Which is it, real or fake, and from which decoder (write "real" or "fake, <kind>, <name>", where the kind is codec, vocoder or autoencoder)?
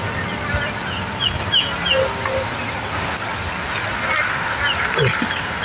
real